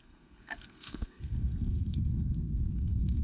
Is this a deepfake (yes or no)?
yes